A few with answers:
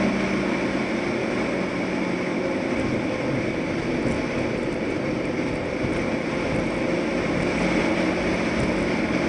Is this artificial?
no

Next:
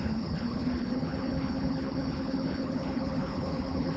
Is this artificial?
yes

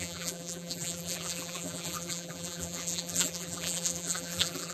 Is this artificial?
yes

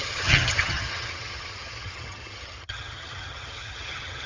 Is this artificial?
yes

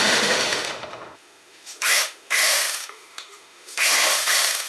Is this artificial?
yes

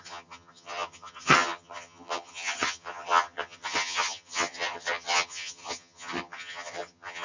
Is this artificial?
yes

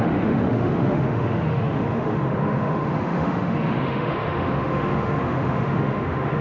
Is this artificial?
yes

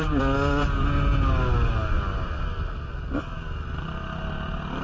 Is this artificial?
no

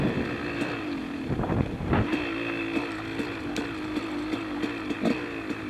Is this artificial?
no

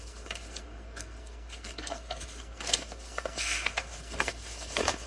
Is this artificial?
yes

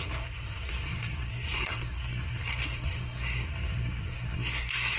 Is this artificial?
yes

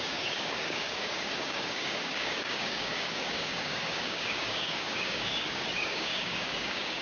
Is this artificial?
yes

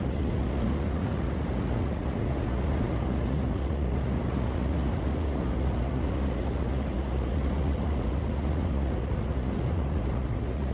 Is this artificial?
yes